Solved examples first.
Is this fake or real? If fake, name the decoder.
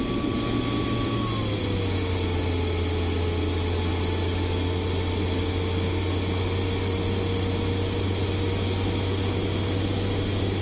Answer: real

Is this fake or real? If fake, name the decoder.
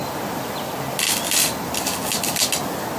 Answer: real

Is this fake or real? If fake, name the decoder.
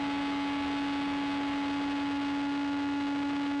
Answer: real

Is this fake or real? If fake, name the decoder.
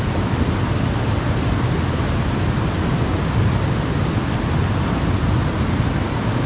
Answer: real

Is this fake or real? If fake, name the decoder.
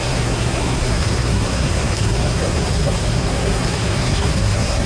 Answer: fake, codec, SNAC